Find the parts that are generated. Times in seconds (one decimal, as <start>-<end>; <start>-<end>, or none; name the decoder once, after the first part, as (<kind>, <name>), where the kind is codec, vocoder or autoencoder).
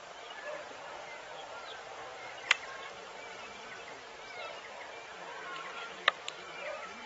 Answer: 0.0-4.3 (vocoder, BigVGAN v2); 5.1-7.1